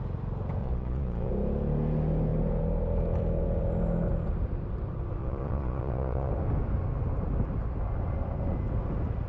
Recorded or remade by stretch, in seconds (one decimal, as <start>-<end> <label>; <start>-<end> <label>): 0.0-0.6 recorded; 0.6-1.3 remade; 1.3-5.2 recorded; 5.2-6.3 remade; 6.3-9.3 recorded